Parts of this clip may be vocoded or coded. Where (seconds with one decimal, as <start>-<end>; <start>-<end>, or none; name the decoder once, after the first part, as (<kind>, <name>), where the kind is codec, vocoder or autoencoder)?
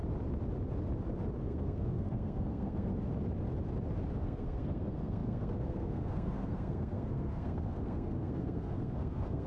1.4-2.9 (codec, SNAC); 4.2-9.5